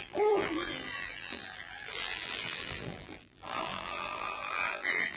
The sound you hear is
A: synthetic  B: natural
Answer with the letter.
A